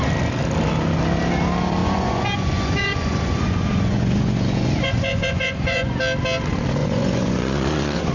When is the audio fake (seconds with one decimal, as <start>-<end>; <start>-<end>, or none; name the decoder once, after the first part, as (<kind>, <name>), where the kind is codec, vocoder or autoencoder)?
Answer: 1.8-6.0 (vocoder, Vocos); 6.8-8.1